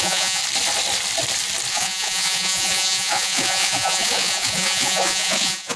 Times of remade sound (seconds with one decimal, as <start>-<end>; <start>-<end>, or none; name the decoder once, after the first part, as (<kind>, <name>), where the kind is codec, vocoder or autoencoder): 0.0-0.4 (vocoder, Vocos); 1.7-5.8